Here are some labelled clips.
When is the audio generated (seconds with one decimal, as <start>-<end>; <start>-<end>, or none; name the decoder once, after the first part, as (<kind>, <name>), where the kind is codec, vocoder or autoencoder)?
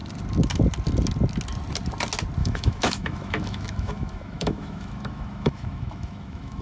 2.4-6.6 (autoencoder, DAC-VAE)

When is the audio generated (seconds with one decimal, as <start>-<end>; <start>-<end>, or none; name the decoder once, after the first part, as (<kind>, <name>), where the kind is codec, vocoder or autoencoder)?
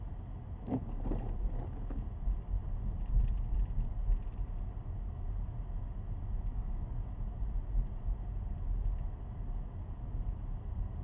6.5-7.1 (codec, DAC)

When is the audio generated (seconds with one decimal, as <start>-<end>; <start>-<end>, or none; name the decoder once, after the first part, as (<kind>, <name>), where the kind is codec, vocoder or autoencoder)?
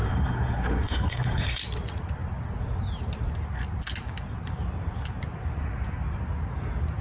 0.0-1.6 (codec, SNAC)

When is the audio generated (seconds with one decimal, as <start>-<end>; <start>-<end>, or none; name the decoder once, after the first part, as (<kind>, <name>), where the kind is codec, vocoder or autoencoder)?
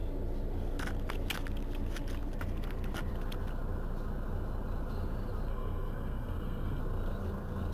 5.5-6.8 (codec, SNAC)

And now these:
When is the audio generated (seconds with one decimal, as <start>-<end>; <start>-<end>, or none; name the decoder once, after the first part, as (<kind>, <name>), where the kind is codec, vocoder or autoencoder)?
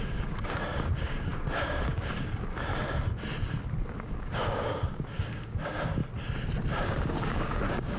0.0-2.7 (codec, DAC); 4.0-6.0; 6.8-8.0